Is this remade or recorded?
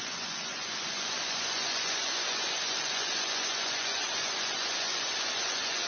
remade